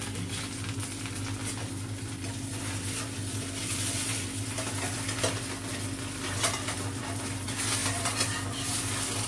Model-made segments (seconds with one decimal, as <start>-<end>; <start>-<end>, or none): none